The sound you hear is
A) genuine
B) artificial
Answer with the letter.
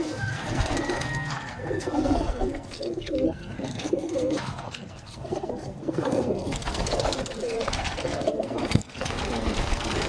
B